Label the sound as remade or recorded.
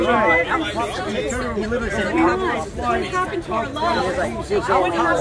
recorded